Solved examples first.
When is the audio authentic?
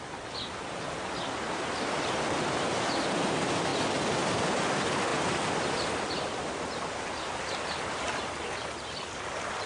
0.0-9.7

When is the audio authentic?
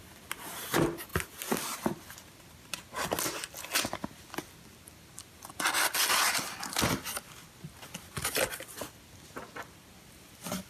0.0-10.7